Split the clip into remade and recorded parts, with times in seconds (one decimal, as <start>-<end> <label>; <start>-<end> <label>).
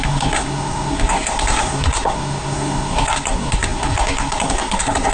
0.0-5.1 remade